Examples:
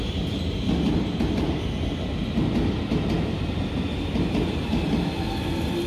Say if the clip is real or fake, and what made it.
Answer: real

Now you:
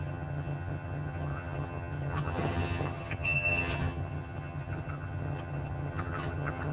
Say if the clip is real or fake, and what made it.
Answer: fake, vocoder, HiFi-GAN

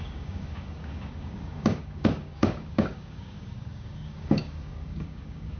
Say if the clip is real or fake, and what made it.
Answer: fake, codec, DAC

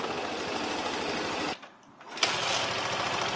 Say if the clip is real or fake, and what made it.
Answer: real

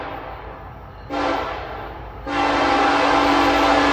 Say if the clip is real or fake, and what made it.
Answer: real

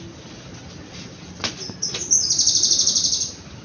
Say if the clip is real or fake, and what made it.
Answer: real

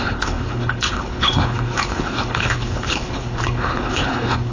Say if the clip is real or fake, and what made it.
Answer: fake, codec, HILCodec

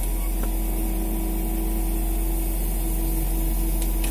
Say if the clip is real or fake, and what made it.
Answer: real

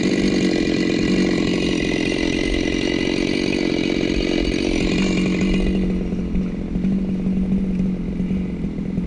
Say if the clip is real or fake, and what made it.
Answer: real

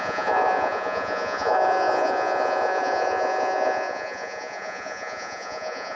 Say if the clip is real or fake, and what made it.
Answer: fake, vocoder, Vocos